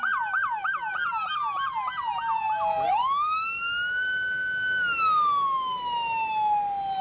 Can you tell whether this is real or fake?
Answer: real